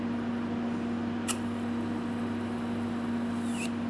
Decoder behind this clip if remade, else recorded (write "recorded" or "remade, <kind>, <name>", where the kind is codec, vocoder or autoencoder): recorded